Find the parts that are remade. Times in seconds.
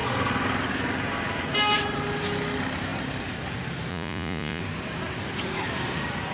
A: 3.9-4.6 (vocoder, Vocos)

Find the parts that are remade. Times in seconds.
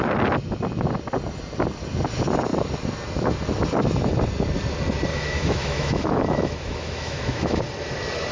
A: 5.1-7.6 (autoencoder, DAC-VAE)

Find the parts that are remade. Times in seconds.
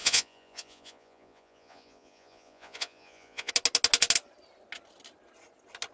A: 0.0-3.5 (vocoder, Vocos)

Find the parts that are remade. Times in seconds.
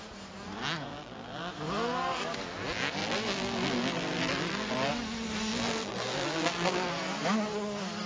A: 0.9-1.5 (vocoder, BigVGAN v2); 3.0-4.9; 5.5-6.9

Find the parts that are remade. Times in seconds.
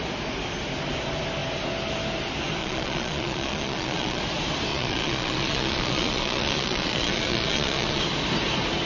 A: 2.6-4.2 (vocoder, Vocos); 4.7-8.0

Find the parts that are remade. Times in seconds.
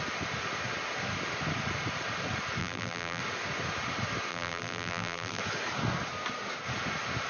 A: 2.6-3.2 (vocoder, BigVGAN v2); 4.3-5.4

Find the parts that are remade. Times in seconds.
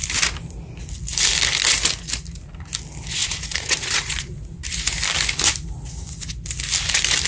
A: 3.2-4.6 (vocoder, Vocos)